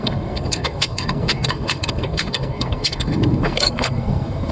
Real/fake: fake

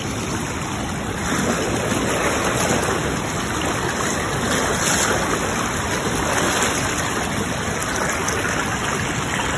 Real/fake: real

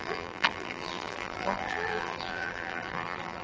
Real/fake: fake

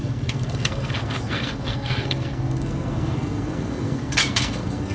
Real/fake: fake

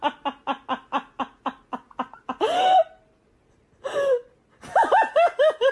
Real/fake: real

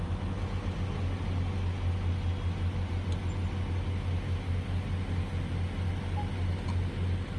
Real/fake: real